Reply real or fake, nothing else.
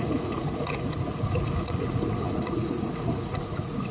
fake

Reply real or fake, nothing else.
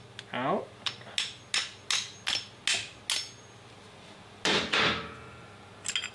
real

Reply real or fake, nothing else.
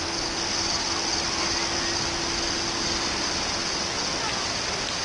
real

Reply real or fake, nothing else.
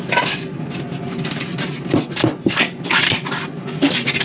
real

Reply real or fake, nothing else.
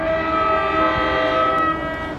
real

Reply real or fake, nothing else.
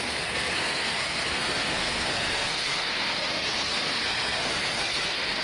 fake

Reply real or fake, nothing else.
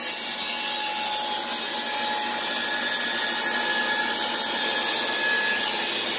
real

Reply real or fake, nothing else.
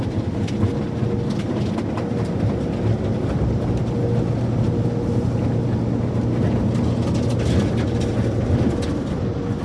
real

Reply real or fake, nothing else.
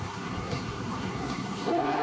fake